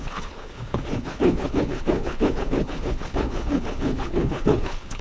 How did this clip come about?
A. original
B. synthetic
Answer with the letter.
B